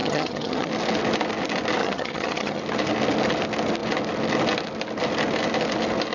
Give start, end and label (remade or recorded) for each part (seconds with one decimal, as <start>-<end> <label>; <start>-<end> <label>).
0.0-0.7 remade; 0.7-1.8 recorded; 1.8-2.6 remade; 2.6-6.1 recorded